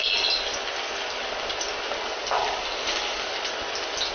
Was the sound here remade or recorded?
recorded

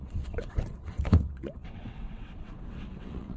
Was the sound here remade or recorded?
remade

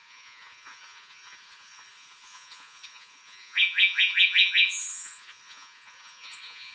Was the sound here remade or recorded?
remade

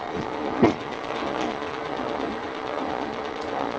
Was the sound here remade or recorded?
remade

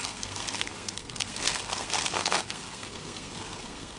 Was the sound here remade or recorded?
remade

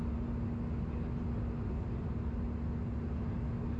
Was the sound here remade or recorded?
recorded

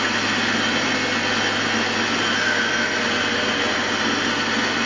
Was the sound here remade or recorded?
recorded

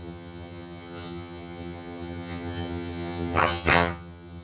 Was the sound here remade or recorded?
remade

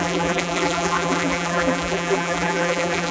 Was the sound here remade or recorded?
remade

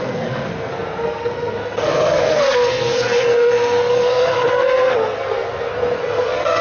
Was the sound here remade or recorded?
remade